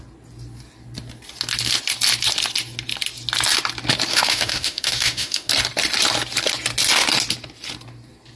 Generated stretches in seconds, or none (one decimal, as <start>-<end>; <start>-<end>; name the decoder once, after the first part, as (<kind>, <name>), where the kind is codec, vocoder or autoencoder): 4.1-5.5 (autoencoder, DAC-VAE)